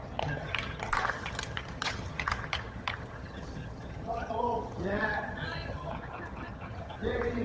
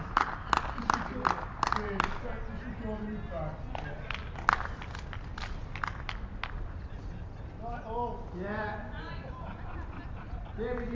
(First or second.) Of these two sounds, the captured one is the second